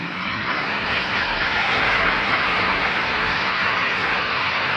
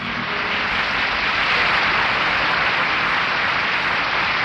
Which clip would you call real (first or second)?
second